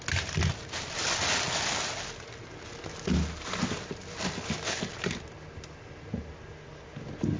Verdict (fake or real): real